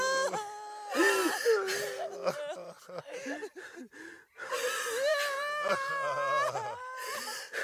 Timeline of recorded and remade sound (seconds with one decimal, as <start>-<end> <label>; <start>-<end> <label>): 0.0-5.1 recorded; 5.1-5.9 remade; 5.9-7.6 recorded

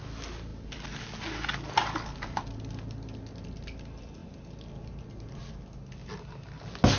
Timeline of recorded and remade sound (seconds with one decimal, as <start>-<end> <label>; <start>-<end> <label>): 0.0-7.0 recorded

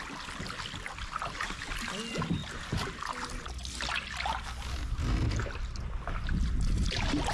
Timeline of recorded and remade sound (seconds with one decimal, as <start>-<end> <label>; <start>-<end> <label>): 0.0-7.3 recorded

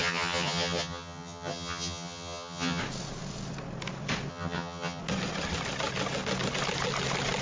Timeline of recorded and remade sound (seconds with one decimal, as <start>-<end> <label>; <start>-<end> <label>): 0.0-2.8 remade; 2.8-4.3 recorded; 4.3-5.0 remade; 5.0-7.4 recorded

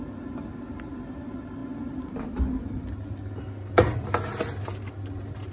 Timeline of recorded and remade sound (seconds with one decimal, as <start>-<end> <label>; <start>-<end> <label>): 0.0-5.5 recorded

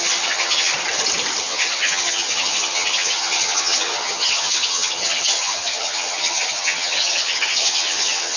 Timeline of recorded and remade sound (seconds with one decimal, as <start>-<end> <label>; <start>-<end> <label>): 0.0-0.7 remade; 0.7-1.4 recorded; 1.4-8.4 remade

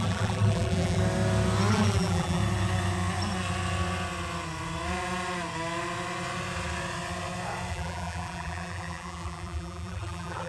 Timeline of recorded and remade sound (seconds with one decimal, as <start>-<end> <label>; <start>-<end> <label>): 0.0-1.0 remade; 1.0-1.7 recorded; 1.7-2.4 remade; 2.4-7.7 recorded; 7.7-10.5 remade

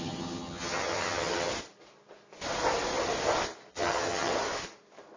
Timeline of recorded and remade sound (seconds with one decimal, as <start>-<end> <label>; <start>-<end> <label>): 0.0-1.5 remade; 1.5-3.7 recorded; 3.7-4.3 remade; 4.3-5.2 recorded